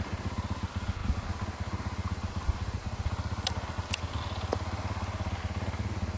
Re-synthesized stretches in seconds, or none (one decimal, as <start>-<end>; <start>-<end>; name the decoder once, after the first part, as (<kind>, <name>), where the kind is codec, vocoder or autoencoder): none